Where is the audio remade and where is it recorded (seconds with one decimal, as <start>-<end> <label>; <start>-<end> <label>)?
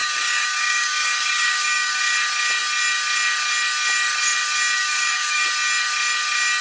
0.0-2.0 remade; 2.0-4.8 recorded; 4.8-5.5 remade; 5.5-6.6 recorded